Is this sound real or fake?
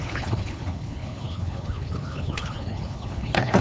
fake